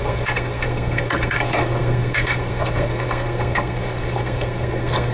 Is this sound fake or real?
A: fake